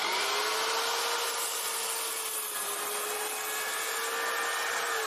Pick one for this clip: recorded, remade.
recorded